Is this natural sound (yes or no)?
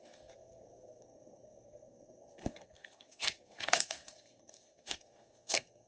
no